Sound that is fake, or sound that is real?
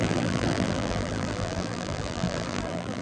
fake